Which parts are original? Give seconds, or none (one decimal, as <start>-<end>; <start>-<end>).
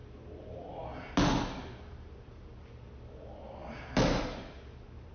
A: 0.0-5.1